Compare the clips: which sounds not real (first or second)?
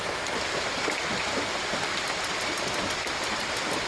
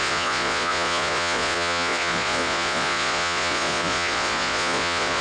second